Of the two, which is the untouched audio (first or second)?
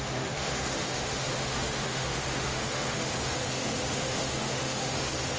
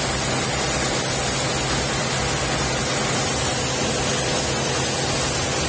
second